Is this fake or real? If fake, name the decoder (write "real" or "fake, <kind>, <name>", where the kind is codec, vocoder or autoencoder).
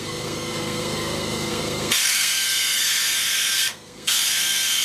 fake, codec, SNAC